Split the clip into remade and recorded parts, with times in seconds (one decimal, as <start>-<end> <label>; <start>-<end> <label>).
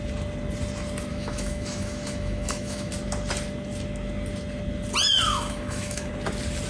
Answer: 0.0-1.1 recorded; 1.1-2.9 remade; 2.9-5.3 recorded; 5.3-6.1 remade; 6.1-6.7 recorded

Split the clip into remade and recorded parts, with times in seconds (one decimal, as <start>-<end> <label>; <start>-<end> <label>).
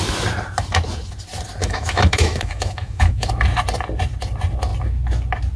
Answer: 0.0-1.6 recorded; 1.6-3.3 remade; 3.3-5.6 recorded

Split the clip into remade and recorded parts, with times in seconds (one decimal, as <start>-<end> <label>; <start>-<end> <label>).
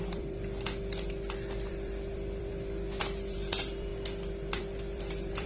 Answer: 0.0-0.4 remade; 0.4-1.7 recorded; 1.7-2.5 remade; 2.5-3.0 recorded; 3.0-3.9 remade; 3.9-4.5 recorded; 4.5-5.5 remade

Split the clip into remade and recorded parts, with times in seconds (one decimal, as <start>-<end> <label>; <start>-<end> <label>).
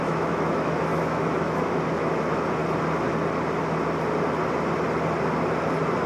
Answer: 0.0-2.6 remade; 2.6-6.1 recorded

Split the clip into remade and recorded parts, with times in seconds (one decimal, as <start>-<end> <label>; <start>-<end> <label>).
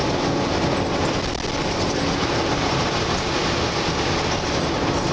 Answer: 0.0-5.1 recorded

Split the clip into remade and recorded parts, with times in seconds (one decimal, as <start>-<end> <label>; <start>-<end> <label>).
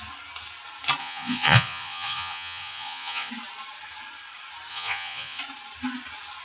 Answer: 0.0-1.0 recorded; 1.0-3.3 remade; 3.3-4.7 recorded; 4.7-5.4 remade; 5.4-6.4 recorded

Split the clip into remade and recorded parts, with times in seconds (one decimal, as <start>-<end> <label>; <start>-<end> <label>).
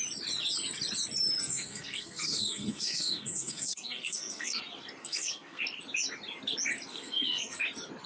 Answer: 0.0-1.4 recorded; 1.4-4.6 remade; 4.6-5.0 recorded; 5.0-5.6 remade; 5.6-6.9 recorded; 6.9-7.6 remade; 7.6-8.1 recorded